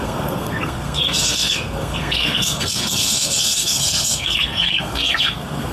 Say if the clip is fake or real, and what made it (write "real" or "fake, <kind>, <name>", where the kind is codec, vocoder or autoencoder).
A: fake, codec, SNAC